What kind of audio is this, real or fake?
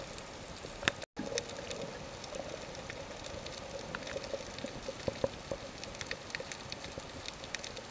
real